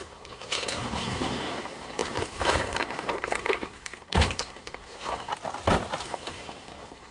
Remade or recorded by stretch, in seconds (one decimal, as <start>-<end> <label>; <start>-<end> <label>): 0.0-5.3 remade; 5.3-6.0 recorded; 6.0-7.1 remade